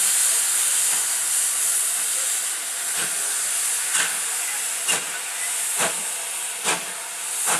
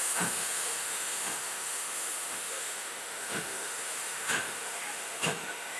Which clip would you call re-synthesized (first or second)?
second